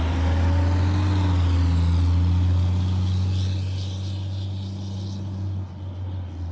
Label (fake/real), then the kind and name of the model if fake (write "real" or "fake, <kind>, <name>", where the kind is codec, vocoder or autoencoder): real